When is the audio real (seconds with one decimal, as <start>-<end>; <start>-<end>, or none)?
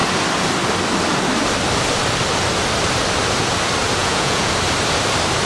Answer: 0.0-4.0; 4.5-5.5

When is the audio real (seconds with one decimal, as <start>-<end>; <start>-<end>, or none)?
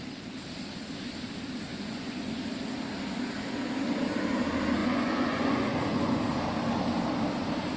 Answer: 0.0-1.7; 2.4-4.8; 6.2-7.8